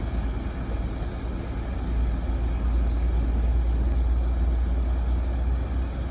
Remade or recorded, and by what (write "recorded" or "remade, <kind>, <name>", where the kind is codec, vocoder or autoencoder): recorded